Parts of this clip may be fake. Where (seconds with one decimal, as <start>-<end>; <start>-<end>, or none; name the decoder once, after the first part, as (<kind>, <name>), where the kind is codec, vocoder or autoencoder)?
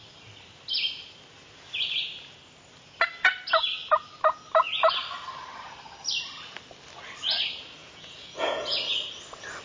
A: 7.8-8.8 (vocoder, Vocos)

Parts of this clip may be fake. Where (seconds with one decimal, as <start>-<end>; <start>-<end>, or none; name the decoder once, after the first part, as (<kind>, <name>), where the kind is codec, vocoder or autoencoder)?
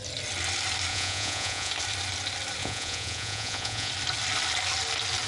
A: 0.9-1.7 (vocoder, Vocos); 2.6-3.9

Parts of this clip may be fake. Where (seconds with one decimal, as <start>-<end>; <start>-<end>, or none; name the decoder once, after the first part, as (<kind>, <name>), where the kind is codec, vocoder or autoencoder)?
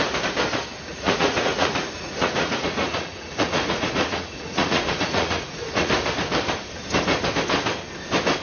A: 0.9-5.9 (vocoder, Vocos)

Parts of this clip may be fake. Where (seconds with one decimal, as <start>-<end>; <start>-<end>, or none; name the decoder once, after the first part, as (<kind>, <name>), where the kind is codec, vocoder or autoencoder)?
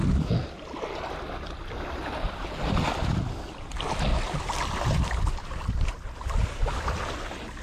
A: none